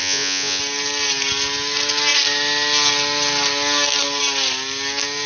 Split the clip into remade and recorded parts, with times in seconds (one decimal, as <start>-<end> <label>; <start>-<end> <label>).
0.0-0.6 remade; 0.6-5.3 recorded